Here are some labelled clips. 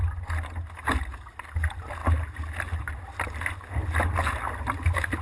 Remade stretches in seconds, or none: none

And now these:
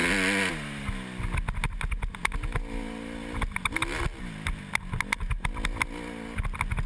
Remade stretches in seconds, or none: none

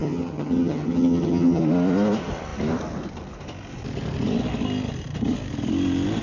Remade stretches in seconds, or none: 0.0-1.6

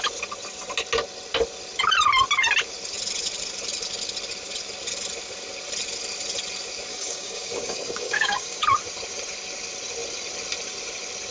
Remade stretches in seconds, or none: 6.9-8.6

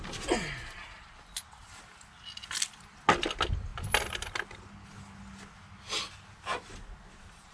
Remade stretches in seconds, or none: none

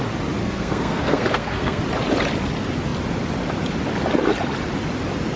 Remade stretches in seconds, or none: 0.4-1.8